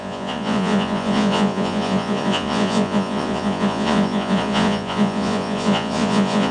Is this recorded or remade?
remade